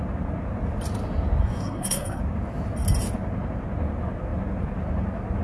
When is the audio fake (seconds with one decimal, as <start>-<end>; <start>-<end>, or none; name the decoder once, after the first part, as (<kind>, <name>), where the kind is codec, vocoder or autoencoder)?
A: 1.4-2.2 (codec, SNAC)

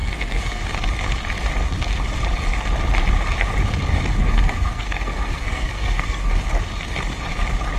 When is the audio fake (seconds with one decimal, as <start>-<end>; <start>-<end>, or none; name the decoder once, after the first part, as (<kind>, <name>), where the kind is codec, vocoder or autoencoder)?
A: 0.0-0.6 (codec, SNAC); 4.2-6.3

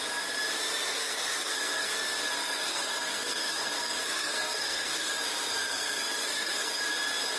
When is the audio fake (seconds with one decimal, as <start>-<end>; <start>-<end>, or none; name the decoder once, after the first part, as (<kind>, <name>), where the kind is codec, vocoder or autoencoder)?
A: 0.9-1.9 (codec, SNAC); 2.4-5.1; 5.6-6.7

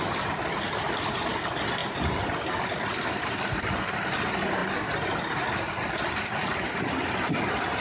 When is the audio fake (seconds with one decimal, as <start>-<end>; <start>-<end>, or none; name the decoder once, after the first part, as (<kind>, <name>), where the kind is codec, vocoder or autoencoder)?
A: none

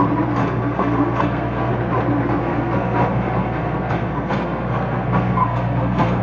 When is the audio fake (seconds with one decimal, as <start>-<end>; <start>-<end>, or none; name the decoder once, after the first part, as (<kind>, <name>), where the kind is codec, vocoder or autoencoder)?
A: 0.4-1.7 (codec, SNAC); 2.4-6.2